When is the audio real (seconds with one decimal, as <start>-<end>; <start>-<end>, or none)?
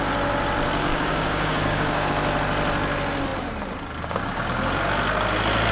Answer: 0.0-0.8; 2.1-5.7